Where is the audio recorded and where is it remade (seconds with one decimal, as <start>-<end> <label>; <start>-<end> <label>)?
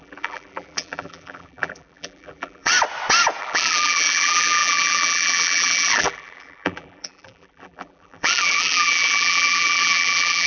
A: 0.0-2.7 remade; 2.7-3.4 recorded; 3.4-10.5 remade